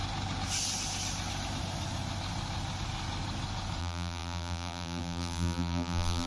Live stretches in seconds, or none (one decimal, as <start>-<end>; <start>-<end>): 0.0-3.8